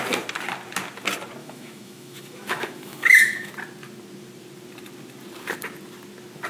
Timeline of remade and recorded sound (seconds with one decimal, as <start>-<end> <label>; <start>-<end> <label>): 0.0-1.4 recorded; 1.4-3.5 remade; 3.5-6.5 recorded